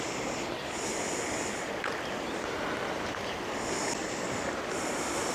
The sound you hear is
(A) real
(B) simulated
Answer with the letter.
A